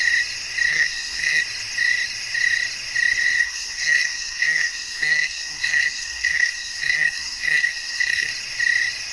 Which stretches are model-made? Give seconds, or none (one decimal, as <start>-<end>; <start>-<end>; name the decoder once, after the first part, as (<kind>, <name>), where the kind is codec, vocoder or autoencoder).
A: 0.7-1.4 (codec, SNAC); 3.4-8.3